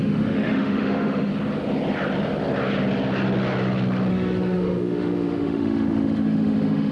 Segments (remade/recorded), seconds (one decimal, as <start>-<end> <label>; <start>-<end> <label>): 0.0-1.3 remade; 1.3-4.1 recorded; 4.1-6.9 remade